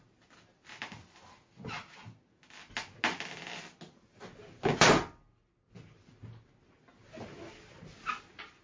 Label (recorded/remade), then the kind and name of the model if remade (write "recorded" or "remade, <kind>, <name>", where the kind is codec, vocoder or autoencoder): recorded